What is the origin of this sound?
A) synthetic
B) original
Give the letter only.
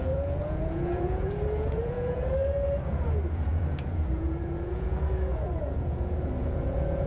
A